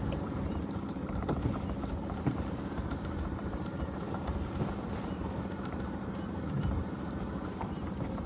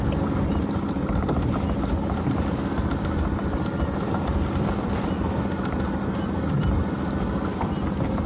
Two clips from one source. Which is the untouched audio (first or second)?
second